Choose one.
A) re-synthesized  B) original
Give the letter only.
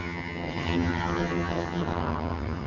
A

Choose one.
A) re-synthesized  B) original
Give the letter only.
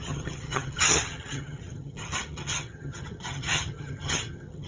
A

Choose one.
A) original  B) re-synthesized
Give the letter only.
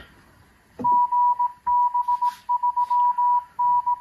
A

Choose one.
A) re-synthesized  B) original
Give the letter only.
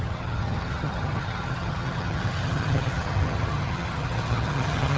A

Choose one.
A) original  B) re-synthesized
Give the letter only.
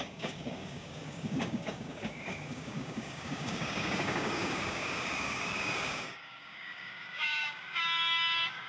B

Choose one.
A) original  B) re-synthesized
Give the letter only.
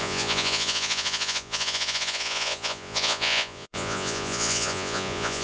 B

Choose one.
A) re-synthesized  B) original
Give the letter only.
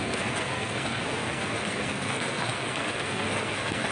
A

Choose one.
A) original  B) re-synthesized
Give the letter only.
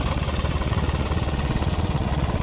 B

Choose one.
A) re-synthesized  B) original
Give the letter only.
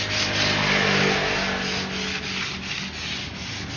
B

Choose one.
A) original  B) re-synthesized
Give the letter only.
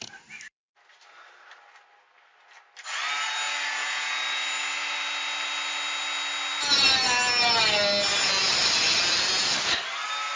A